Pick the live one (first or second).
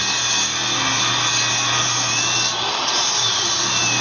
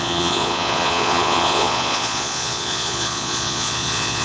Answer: first